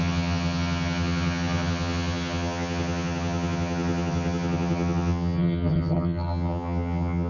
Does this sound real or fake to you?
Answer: fake